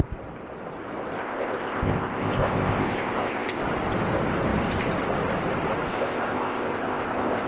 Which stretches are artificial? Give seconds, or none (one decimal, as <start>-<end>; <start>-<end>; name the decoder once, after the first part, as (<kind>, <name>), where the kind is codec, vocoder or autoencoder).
1.2-3.6 (codec, ZipCodec); 5.9-7.5